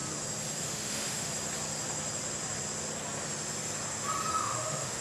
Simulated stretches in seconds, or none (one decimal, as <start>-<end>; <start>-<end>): 0.6-1.3; 4.3-5.0